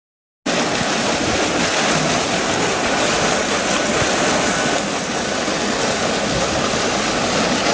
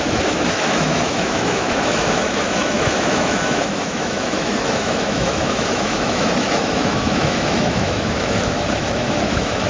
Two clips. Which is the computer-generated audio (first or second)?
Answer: second